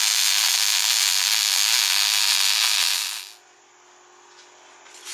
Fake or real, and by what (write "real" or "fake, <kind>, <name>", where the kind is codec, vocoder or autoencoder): real